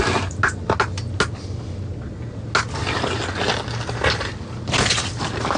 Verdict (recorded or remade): recorded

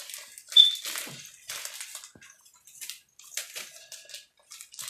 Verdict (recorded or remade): recorded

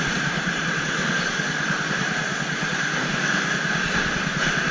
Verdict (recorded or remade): remade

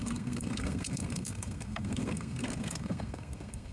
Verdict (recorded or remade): remade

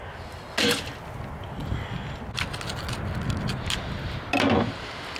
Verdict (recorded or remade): recorded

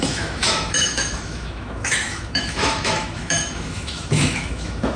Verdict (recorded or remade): remade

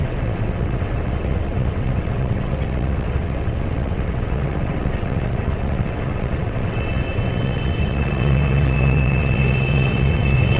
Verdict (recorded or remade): remade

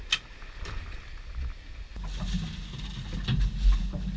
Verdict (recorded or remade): recorded